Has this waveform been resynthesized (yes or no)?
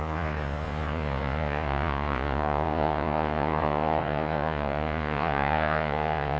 yes